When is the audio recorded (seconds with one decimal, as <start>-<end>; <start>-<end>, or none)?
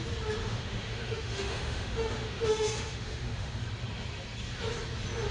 0.0-0.4; 3.6-5.3